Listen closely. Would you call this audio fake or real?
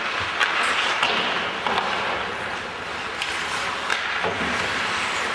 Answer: real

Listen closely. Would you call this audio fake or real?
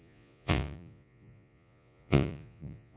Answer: fake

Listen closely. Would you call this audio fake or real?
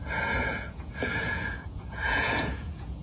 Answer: fake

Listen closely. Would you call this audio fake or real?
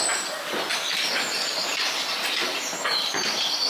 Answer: real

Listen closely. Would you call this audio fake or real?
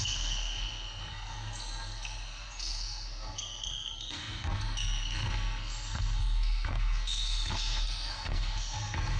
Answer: fake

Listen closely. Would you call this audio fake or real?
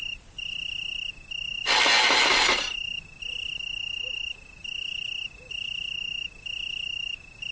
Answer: real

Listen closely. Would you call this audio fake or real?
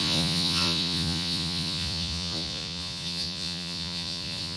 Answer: fake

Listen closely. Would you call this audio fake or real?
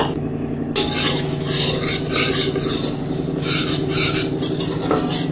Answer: real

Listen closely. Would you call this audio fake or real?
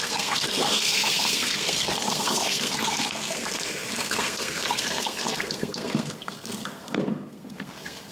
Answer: fake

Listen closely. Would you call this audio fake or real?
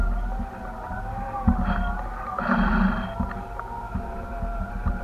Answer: real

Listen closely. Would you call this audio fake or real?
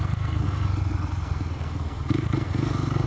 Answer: fake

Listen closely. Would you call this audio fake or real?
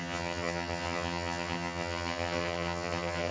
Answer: fake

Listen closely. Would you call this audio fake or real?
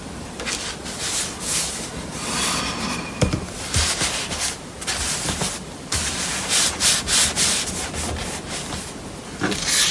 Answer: real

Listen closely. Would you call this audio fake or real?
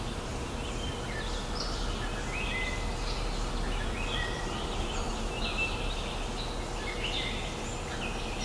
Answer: real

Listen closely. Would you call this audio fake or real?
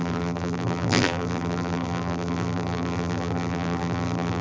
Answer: fake